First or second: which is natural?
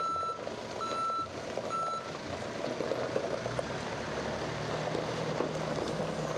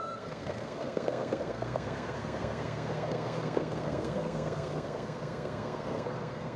first